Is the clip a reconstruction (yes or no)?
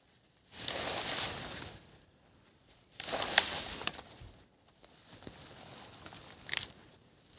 no